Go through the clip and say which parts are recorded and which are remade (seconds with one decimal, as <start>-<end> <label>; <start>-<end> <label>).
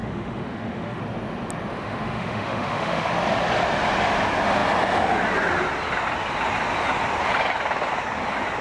0.0-1.0 remade; 1.0-1.7 recorded; 1.7-3.1 remade; 3.1-8.6 recorded